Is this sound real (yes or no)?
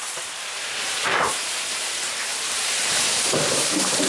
no